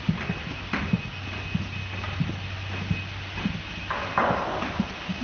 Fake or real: real